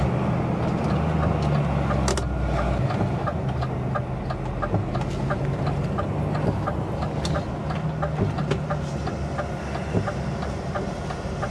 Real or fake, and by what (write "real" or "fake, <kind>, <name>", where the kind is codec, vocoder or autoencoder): real